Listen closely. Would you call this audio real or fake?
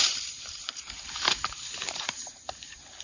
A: fake